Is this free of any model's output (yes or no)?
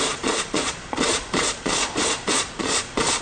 no